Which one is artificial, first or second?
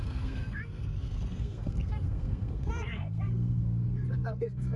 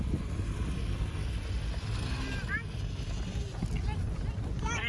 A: first